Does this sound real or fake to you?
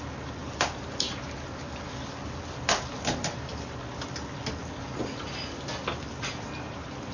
real